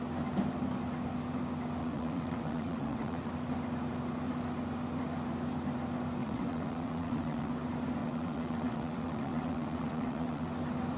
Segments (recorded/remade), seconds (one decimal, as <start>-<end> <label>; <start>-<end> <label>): 0.0-1.8 recorded; 1.8-3.3 remade; 3.3-6.2 recorded; 6.2-7.5 remade; 7.5-8.0 recorded; 8.0-10.5 remade; 10.5-11.0 recorded